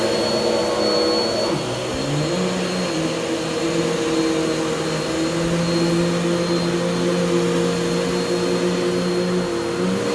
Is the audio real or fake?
real